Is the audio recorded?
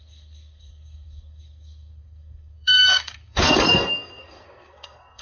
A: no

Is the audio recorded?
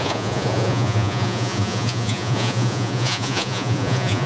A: no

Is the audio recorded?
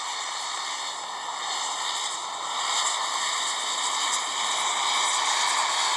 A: yes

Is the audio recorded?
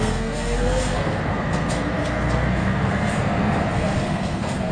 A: no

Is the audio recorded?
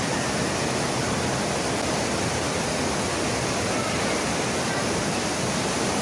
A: yes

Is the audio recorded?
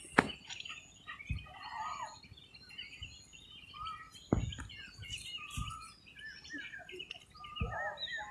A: yes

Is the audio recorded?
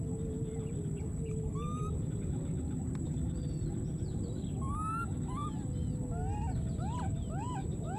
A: yes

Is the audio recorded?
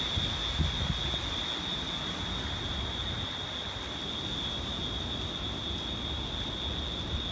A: yes